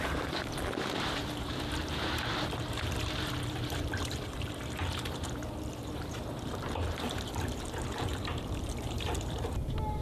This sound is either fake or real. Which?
fake